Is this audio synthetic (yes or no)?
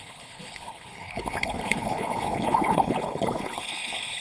yes